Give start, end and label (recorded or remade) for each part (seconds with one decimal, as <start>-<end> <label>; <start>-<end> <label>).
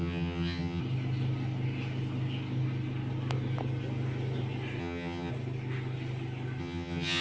0.0-0.8 remade; 0.8-4.8 recorded; 4.8-5.3 remade; 5.3-6.6 recorded; 6.6-7.2 remade